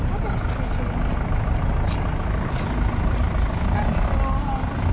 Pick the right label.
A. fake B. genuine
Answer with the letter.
B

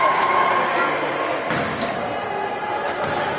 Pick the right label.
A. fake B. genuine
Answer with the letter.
B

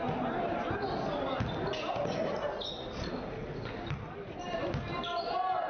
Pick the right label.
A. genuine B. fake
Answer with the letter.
A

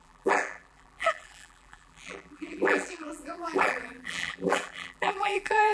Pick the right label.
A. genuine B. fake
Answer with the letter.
B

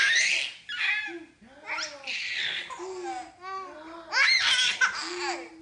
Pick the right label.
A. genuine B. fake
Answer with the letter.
A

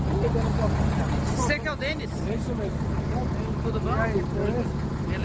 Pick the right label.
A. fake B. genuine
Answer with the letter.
B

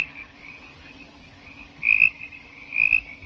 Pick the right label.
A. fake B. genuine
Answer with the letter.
B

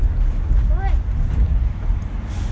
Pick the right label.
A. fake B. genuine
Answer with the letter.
B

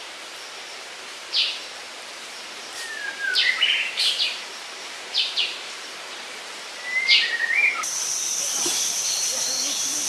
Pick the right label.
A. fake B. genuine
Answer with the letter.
A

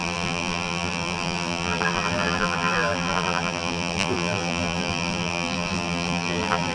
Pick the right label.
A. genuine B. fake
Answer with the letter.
B